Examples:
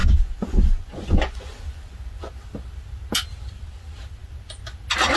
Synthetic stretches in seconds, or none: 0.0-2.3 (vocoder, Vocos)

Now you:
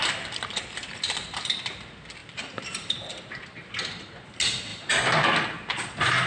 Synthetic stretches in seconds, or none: 0.0-1.6 (vocoder, BigVGAN v2); 2.2-4.3; 4.7-5.3